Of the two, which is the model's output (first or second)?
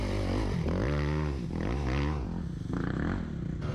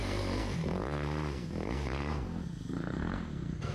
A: second